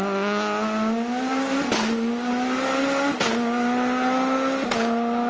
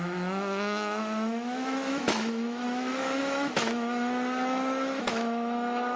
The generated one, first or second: second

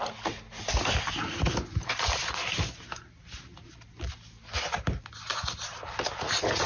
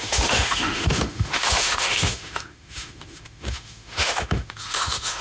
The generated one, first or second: second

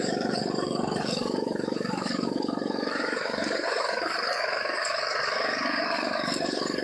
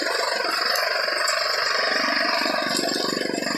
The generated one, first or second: first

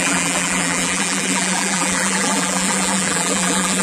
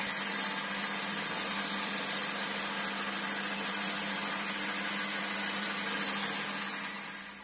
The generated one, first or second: first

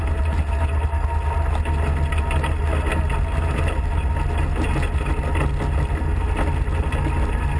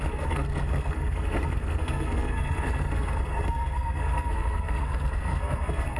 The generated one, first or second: second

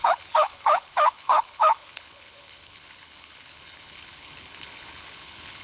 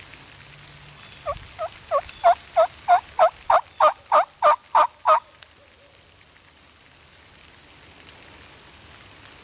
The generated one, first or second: first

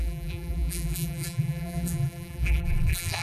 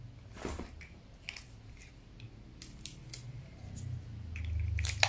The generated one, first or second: first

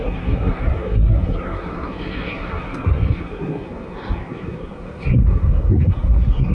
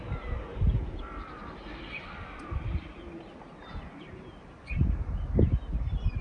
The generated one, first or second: first